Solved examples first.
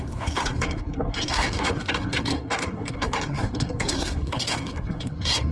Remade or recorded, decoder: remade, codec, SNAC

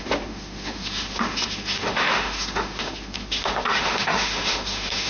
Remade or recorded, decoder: remade, autoencoder, DAC-VAE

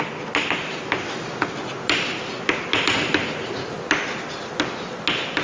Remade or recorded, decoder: recorded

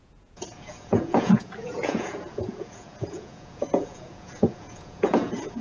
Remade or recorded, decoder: remade, vocoder, Vocos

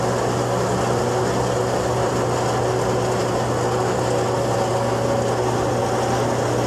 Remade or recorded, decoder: recorded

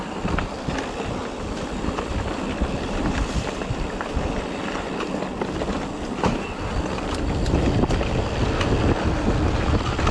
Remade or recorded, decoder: recorded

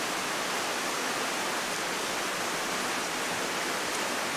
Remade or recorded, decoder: recorded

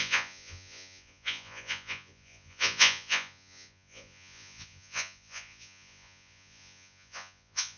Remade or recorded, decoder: remade, vocoder, Vocos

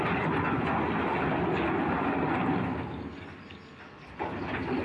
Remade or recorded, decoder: recorded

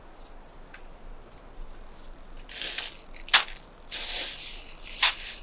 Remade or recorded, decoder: recorded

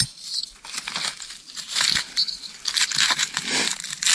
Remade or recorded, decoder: recorded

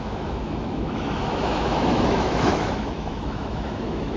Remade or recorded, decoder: remade, autoencoder, DAC-VAE